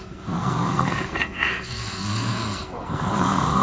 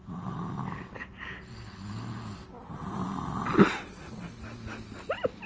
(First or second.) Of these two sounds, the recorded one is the second